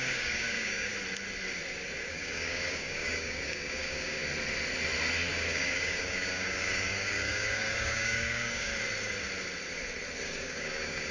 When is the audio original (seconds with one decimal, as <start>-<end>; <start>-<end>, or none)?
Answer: 0.9-2.0; 4.2-5.3; 8.7-10.2